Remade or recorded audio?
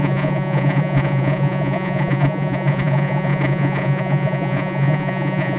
remade